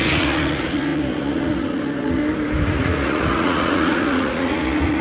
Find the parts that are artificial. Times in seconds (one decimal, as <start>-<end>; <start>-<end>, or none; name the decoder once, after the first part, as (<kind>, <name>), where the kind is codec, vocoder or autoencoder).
0.0-2.2 (vocoder, Vocos); 2.7-5.0